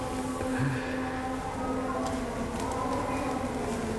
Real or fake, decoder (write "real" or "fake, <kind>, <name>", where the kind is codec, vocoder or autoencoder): real